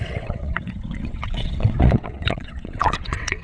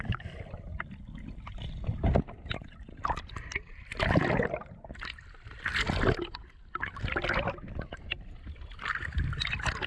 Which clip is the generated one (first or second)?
first